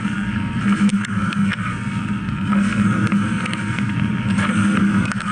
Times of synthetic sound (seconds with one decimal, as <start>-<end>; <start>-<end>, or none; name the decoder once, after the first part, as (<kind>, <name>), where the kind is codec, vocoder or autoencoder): 0.0-5.3 (codec, SNAC)